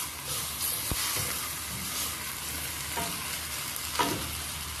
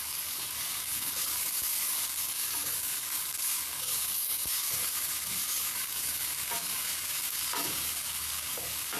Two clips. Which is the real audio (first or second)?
first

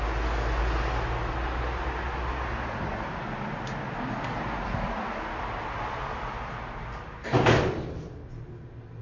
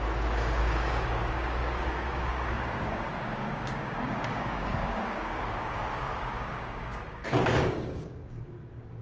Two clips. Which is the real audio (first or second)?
first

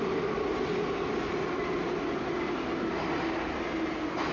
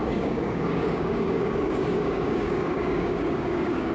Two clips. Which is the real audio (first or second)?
first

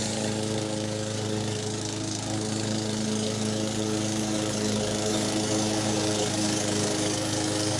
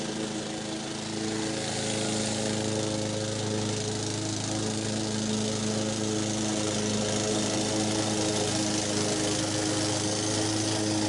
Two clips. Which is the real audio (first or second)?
second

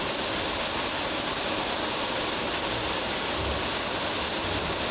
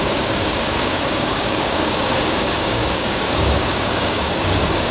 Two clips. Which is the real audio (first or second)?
first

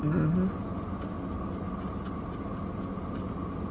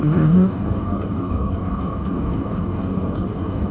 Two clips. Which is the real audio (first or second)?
first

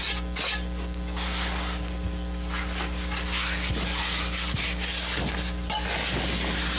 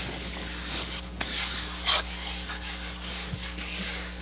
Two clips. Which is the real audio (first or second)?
first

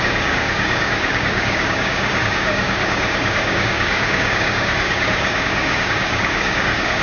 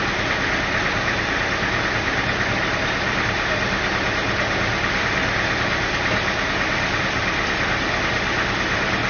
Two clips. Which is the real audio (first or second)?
second